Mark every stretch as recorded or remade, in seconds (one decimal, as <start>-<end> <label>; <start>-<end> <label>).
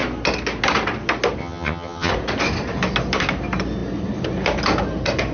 0.0-1.4 recorded; 1.4-2.1 remade; 2.1-5.3 recorded